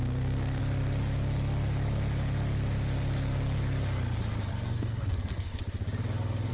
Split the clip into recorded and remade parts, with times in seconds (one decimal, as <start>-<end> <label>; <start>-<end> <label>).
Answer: 0.0-0.6 remade; 0.6-4.5 recorded; 4.5-5.5 remade; 5.5-6.5 recorded